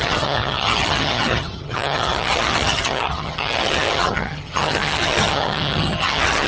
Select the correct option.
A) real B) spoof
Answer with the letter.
B